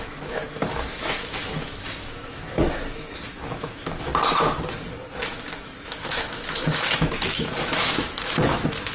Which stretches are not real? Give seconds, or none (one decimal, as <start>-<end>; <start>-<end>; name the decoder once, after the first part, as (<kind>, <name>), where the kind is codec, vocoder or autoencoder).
0.0-4.1 (autoencoder, DAC-VAE); 5.2-8.9